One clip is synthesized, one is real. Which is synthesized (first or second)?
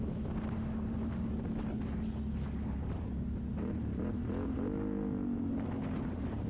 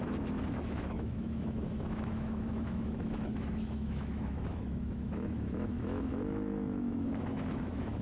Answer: second